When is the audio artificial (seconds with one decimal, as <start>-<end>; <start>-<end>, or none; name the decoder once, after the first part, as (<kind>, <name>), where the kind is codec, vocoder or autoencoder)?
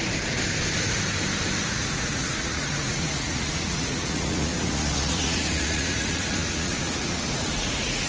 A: 1.7-8.1 (vocoder, Vocos)